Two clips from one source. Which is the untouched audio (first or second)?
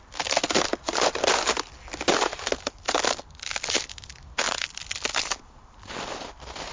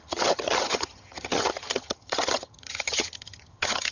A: first